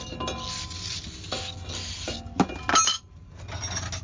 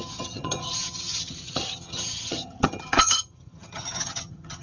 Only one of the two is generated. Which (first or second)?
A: second